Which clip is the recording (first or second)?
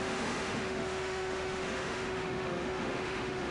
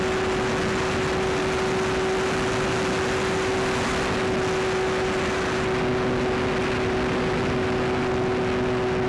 second